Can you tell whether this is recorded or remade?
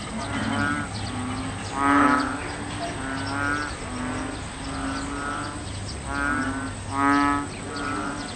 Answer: recorded